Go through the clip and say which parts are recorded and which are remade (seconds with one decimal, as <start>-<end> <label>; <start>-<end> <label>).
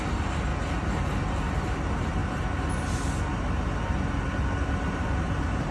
0.0-0.5 remade; 0.5-1.0 recorded; 1.0-2.2 remade; 2.2-4.7 recorded; 4.7-5.7 remade